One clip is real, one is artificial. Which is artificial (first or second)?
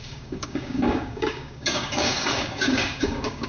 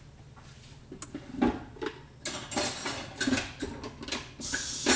first